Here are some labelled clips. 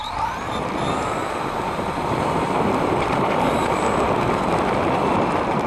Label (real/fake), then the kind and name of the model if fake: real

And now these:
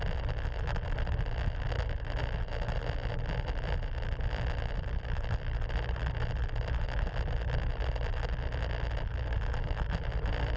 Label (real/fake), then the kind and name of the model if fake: real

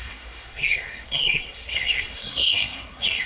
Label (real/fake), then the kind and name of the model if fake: fake, codec, SNAC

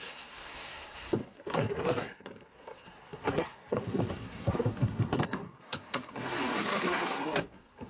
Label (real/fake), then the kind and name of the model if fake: fake, codec, SNAC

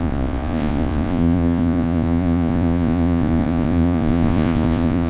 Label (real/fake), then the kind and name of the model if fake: fake, vocoder, Vocos